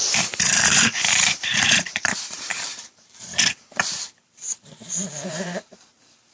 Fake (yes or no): yes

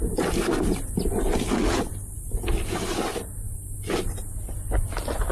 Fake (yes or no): no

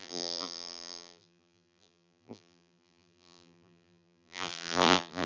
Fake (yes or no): yes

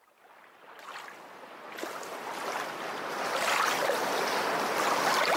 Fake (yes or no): no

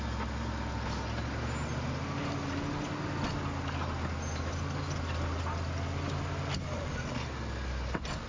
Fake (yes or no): no